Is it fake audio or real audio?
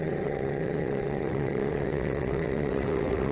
fake